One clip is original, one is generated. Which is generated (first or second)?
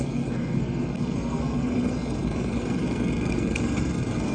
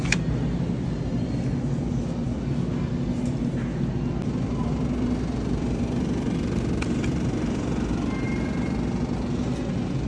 first